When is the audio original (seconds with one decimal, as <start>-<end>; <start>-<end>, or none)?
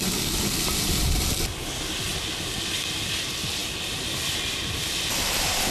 0.0-5.7